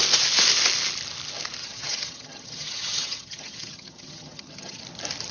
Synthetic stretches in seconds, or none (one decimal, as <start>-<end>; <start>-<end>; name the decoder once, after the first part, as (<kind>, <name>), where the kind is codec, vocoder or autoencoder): 1.6-4.8 (vocoder, HiFi-GAN)